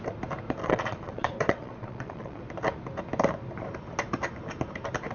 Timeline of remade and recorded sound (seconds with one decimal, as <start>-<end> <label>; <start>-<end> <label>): 0.0-0.6 recorded; 0.6-2.4 remade; 2.4-5.1 recorded

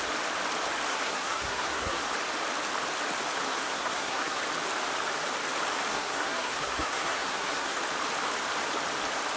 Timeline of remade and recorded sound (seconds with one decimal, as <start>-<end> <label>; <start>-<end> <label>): 0.0-0.9 recorded; 0.9-2.0 remade; 2.0-3.5 recorded; 3.5-4.4 remade; 4.4-5.9 recorded; 5.9-7.8 remade; 7.8-9.4 recorded

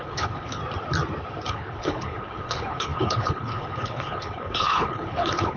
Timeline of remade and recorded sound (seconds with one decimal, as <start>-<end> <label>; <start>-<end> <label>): 0.0-0.6 remade; 0.6-1.5 recorded; 1.5-5.6 remade

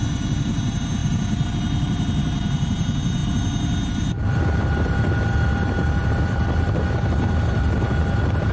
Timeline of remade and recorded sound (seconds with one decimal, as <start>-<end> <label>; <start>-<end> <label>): 0.0-8.5 remade

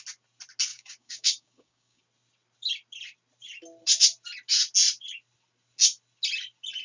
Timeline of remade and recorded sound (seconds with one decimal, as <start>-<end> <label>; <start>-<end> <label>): 0.0-0.7 recorded; 0.7-2.0 remade; 2.0-6.8 recorded